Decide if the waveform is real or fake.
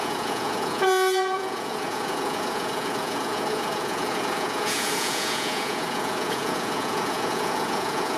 fake